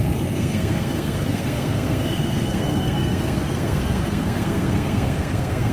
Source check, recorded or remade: remade